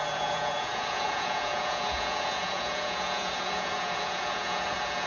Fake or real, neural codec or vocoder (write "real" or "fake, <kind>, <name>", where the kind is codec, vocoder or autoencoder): fake, vocoder, Vocos